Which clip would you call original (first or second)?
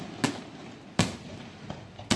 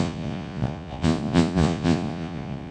first